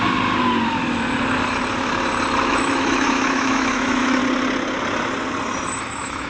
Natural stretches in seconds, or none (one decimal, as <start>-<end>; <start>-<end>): 0.0-2.4; 4.2-5.8